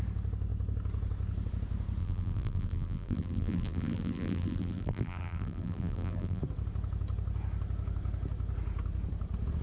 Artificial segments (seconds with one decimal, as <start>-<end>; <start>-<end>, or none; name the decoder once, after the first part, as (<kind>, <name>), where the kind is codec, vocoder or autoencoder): 2.0-6.4 (vocoder, BigVGAN v2)